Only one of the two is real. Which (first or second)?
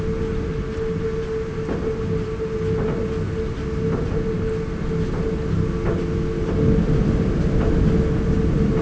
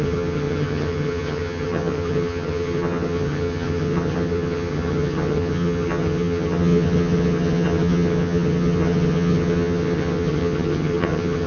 first